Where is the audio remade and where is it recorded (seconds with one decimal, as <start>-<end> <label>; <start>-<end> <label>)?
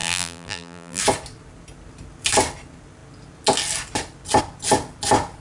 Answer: 0.0-1.0 remade; 1.0-5.4 recorded